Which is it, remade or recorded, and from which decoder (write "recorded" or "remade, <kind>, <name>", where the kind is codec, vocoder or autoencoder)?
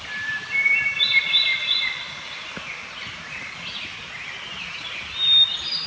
recorded